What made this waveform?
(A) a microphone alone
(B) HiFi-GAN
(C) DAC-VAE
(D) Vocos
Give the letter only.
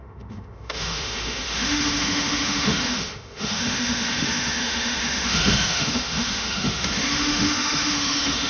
C